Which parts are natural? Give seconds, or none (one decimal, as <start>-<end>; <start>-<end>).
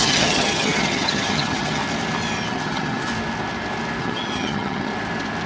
1.8-2.5; 3.1-4.0; 4.9-5.5